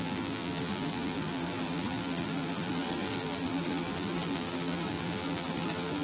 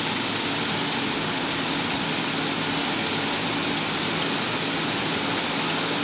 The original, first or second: second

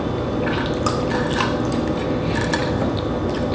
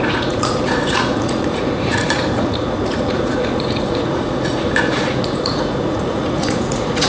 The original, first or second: first